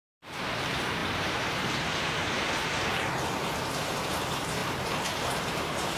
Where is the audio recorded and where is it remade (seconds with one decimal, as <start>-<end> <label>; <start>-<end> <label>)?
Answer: 0.0-2.9 remade; 2.9-3.6 recorded; 3.6-4.6 remade; 4.6-5.4 recorded; 5.4-6.0 remade